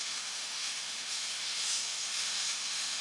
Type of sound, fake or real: fake